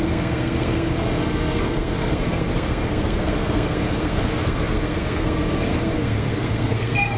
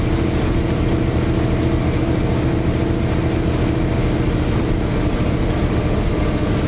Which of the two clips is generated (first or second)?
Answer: first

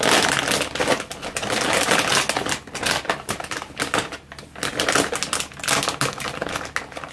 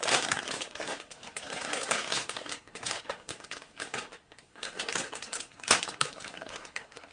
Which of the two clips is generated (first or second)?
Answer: second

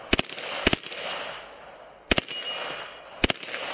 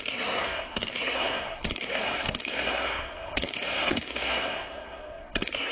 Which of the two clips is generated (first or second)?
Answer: second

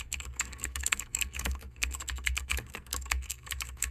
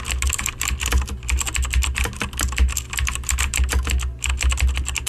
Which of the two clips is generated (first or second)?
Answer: first